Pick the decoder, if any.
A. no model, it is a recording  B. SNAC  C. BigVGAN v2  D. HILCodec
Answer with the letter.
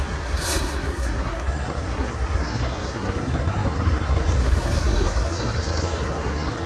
B